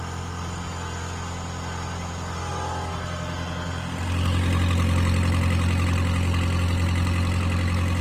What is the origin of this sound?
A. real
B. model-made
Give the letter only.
A